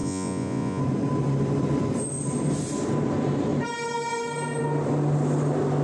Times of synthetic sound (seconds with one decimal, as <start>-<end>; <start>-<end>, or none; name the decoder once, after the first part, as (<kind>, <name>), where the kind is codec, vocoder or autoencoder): 0.0-0.8 (vocoder, Vocos)